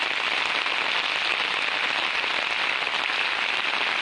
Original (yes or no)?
yes